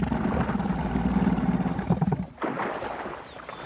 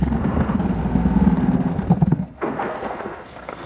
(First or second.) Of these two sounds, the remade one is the second